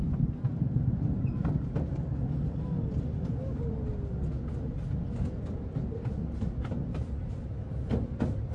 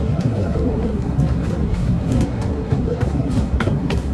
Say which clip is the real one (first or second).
first